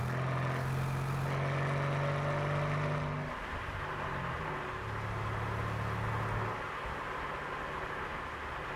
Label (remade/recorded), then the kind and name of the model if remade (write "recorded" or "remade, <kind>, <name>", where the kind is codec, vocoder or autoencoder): recorded